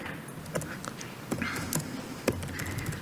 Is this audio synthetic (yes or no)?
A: no